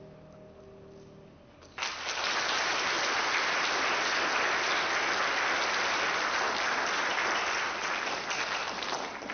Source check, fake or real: real